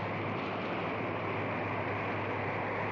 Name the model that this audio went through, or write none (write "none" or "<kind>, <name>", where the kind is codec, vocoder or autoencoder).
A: none